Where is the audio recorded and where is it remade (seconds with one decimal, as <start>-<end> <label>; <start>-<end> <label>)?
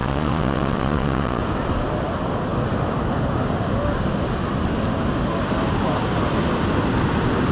0.0-1.4 remade; 1.4-7.5 recorded